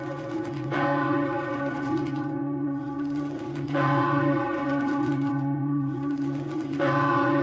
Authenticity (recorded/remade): remade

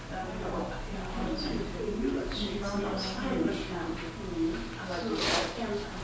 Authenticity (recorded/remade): recorded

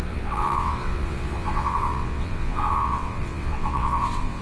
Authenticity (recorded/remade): remade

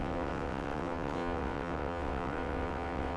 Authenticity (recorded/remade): remade